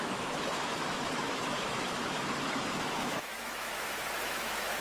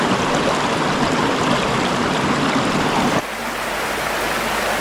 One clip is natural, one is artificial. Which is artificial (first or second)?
first